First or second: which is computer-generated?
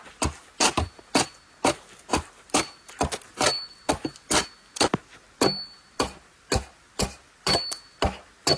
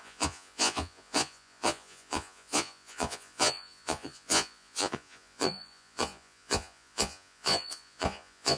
second